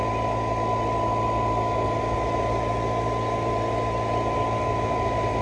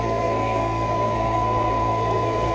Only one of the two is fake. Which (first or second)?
second